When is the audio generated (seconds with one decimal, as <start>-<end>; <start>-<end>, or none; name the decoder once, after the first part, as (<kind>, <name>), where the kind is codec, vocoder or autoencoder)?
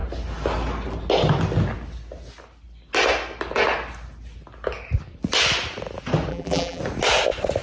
6.3-6.8 (vocoder, BigVGAN v2)